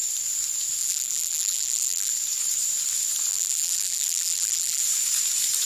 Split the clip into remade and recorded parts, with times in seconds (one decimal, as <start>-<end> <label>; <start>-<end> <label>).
0.0-0.8 recorded; 0.8-2.1 remade; 2.1-3.3 recorded; 3.3-4.8 remade; 4.8-5.6 recorded